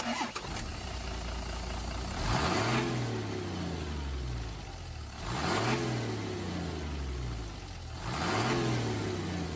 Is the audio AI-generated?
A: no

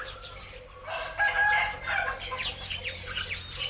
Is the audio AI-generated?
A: no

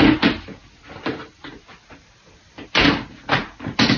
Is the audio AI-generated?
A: no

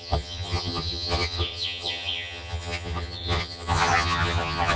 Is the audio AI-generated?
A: yes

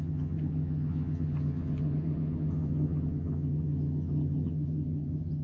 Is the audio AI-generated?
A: yes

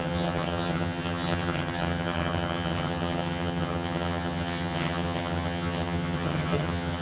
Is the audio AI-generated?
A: yes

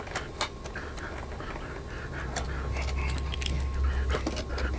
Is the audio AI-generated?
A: no